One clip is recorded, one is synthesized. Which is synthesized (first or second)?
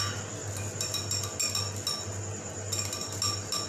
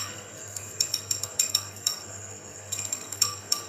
second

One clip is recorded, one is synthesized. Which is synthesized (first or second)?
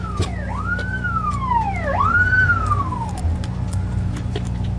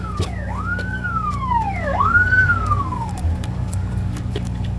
second